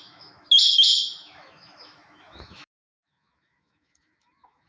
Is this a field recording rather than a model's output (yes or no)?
no